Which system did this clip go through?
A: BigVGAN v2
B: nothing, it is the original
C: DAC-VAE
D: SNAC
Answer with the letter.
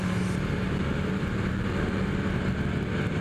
B